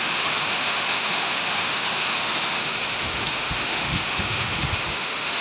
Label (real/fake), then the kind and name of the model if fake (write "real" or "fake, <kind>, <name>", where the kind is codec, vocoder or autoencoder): fake, autoencoder, DAC-VAE